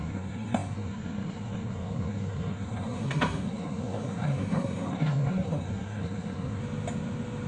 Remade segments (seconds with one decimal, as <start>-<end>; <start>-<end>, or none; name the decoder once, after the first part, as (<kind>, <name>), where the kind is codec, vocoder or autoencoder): 0.0-6.6 (codec, SNAC)